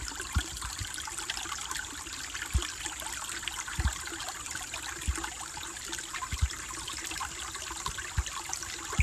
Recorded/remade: recorded